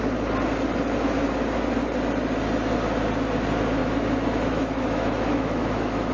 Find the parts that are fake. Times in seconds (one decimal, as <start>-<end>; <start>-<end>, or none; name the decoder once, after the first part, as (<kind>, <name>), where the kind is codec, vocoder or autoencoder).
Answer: 3.8-6.1 (autoencoder, DAC-VAE)